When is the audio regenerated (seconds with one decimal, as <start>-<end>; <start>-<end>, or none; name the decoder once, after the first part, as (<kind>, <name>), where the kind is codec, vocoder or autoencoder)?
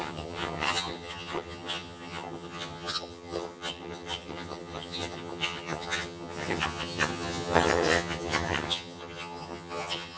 0.0-10.2 (vocoder, HiFi-GAN)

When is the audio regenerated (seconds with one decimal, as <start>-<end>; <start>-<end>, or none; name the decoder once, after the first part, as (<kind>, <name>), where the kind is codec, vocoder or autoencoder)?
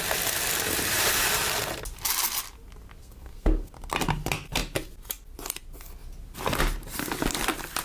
3.0-3.7 (codec, SNAC)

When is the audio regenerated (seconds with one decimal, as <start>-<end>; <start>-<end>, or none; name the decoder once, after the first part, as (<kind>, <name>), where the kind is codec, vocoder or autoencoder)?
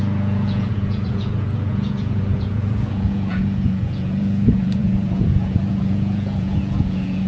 0.0-7.3 (vocoder, Vocos)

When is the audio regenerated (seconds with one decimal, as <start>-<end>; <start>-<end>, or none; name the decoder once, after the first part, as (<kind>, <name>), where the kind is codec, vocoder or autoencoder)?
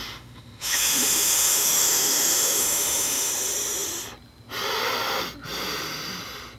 0.0-3.3 (autoencoder, DAC-VAE)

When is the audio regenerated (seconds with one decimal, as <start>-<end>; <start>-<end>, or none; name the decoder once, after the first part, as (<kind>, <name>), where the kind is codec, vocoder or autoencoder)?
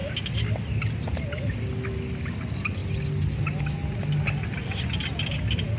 none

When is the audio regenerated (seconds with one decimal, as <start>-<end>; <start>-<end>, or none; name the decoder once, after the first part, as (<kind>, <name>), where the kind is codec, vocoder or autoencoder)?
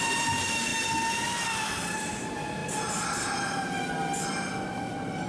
0.0-0.7 (vocoder, BigVGAN v2); 2.1-2.6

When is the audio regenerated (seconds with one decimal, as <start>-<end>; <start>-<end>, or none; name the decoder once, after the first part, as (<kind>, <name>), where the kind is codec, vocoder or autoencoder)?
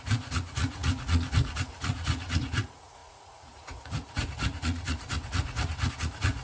0.0-6.4 (vocoder, Vocos)